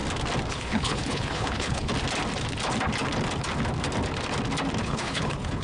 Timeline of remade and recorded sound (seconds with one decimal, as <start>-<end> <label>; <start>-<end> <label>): 0.0-0.5 recorded; 0.5-1.9 remade; 1.9-4.8 recorded; 4.8-5.6 remade